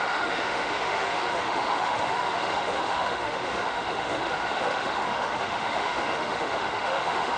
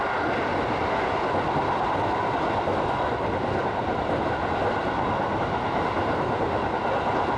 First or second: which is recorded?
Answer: second